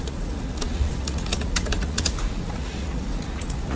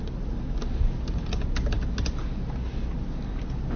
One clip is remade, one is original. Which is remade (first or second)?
first